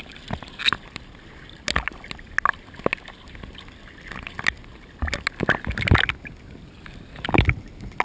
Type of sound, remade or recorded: recorded